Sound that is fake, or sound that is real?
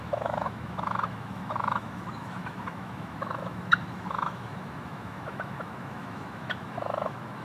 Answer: fake